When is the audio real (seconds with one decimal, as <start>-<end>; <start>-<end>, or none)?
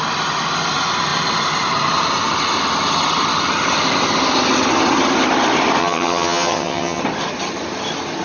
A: 0.0-5.8; 7.0-8.2